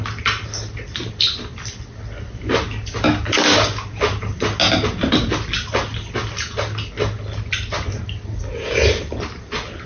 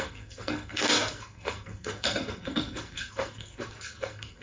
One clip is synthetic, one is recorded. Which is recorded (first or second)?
first